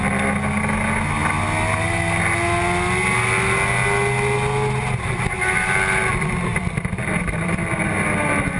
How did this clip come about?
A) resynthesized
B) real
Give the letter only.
B